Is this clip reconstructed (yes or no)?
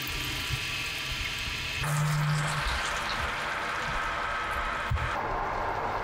no